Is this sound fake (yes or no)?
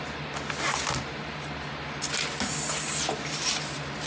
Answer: no